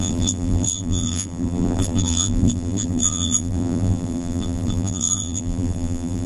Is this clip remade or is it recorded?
remade